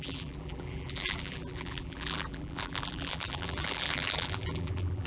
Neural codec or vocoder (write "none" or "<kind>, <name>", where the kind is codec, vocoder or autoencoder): vocoder, BigVGAN v2